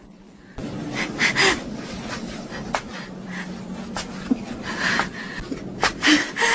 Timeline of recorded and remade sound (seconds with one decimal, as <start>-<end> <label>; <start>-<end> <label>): 0.0-6.5 recorded